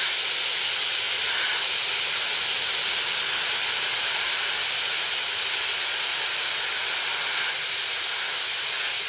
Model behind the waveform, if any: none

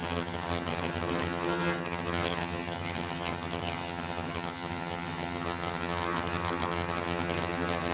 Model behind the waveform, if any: vocoder, HiFi-GAN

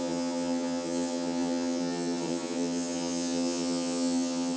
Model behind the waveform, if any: vocoder, HiFi-GAN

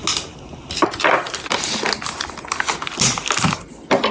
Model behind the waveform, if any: none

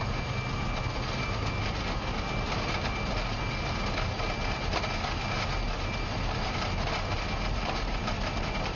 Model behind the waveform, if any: none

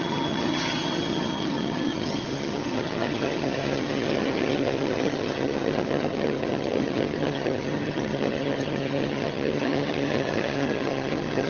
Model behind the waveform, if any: vocoder, HiFi-GAN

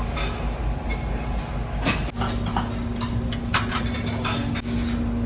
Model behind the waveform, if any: none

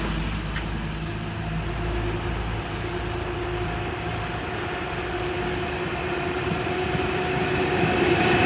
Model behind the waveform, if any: none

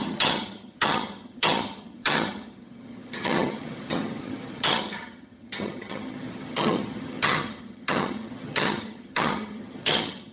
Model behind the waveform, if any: vocoder, HiFi-GAN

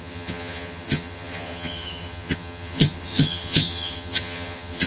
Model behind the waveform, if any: vocoder, HiFi-GAN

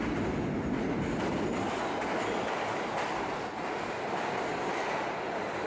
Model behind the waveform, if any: none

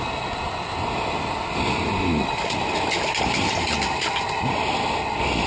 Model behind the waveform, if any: none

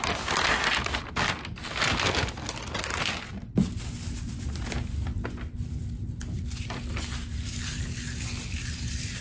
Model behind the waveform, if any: none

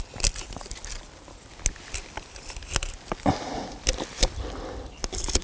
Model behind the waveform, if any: none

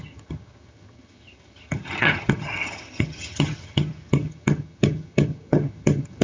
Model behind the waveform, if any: vocoder, HiFi-GAN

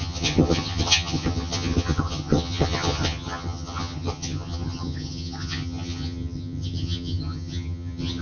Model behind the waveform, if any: vocoder, HiFi-GAN